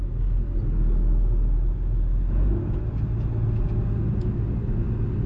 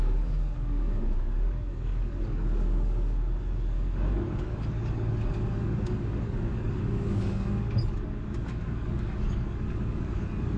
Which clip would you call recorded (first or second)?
first